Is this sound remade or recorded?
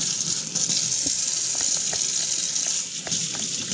recorded